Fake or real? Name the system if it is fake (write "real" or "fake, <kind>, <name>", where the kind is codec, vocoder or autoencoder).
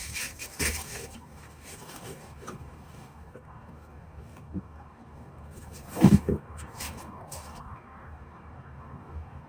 fake, codec, DAC